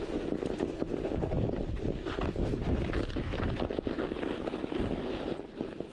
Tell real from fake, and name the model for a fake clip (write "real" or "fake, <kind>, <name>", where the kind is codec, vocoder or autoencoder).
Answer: real